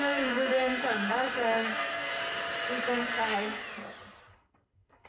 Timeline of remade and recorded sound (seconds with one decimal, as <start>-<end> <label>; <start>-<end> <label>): 0.0-2.2 remade; 2.2-2.9 recorded; 2.9-3.6 remade; 3.6-4.3 recorded; 4.3-5.1 remade